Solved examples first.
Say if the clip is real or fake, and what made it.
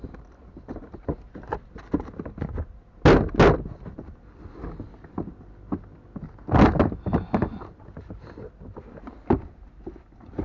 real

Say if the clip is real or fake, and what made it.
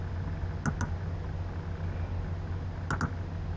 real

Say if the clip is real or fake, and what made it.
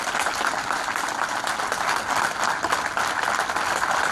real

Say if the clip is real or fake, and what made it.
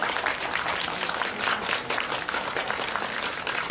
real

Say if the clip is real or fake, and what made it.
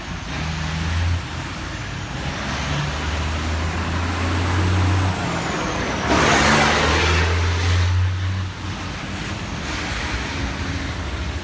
real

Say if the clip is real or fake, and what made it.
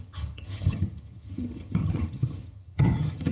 fake, vocoder, HiFi-GAN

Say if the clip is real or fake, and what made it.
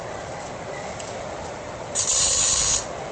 real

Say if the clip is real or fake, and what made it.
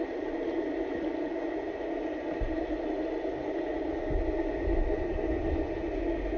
real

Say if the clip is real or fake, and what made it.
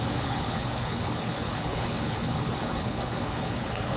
fake, codec, HILCodec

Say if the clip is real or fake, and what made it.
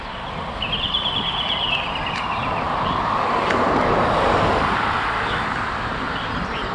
fake, vocoder, BigVGAN v2